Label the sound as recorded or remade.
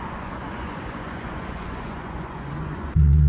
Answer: remade